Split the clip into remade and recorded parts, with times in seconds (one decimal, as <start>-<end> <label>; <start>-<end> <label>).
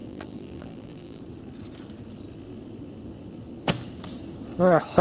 0.0-1.2 remade; 1.2-5.0 recorded